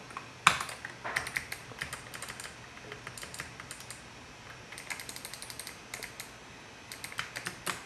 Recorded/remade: recorded